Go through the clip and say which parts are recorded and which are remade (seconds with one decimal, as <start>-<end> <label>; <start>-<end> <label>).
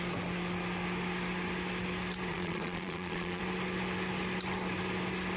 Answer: 0.0-2.3 recorded; 2.3-3.4 remade; 3.4-5.4 recorded